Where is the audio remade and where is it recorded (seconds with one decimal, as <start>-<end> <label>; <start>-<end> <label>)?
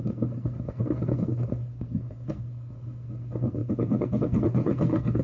0.0-5.2 remade